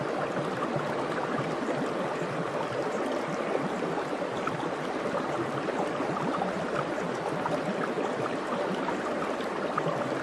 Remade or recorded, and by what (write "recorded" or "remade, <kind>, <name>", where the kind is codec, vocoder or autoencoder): recorded